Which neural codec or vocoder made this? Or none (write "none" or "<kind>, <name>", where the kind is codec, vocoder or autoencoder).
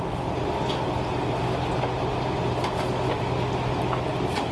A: none